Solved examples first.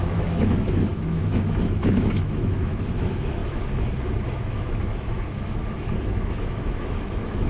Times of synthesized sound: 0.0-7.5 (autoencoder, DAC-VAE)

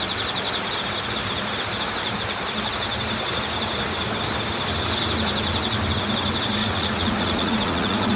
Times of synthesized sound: 6.6-8.2 (vocoder, Vocos)

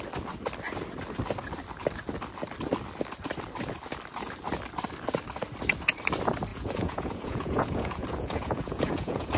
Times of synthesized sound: 6.5-9.4 (vocoder, Vocos)

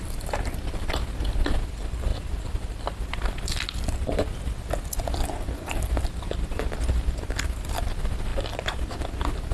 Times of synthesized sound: none

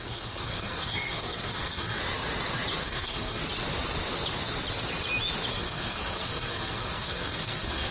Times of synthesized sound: 0.0-2.0 (codec, SNAC); 2.8-3.4; 5.5-7.9

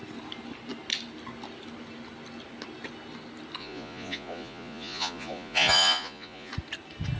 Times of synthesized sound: 3.6-6.5 (vocoder, Vocos)

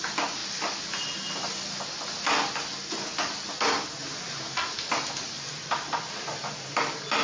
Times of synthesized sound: none

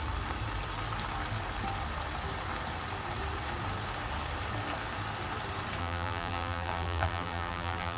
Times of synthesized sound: 5.8-8.0 (vocoder, BigVGAN v2)